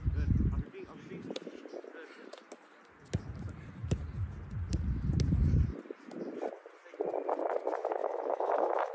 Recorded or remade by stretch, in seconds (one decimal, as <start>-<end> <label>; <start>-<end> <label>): 0.0-8.0 recorded; 8.0-8.9 remade